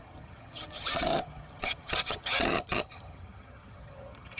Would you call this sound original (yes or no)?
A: no